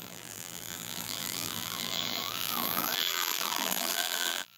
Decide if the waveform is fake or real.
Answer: fake